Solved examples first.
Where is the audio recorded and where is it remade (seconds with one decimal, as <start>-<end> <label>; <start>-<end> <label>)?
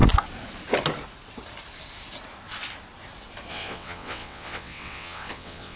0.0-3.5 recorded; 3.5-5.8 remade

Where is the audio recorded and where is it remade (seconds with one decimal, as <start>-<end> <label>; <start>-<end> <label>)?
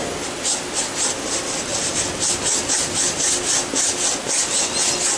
0.0-5.2 recorded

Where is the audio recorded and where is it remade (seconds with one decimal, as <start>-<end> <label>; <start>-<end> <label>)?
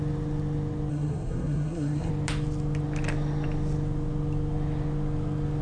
0.0-0.9 recorded; 0.9-2.1 remade; 2.1-5.6 recorded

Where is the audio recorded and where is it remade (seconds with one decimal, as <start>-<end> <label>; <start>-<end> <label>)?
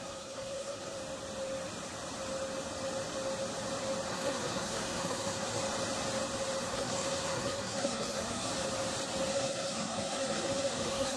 0.0-1.0 remade; 1.0-4.1 recorded; 4.1-5.6 remade; 5.6-6.6 recorded; 6.6-8.5 remade; 8.5-9.3 recorded; 9.3-11.2 remade